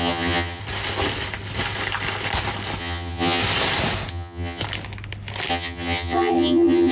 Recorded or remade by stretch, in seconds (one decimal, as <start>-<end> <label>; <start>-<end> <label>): 0.0-0.6 remade; 0.6-2.8 recorded; 2.8-3.4 remade; 3.4-4.1 recorded; 4.1-4.6 remade; 4.6-5.5 recorded; 5.5-6.9 remade